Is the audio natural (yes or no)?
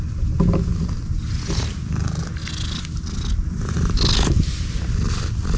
yes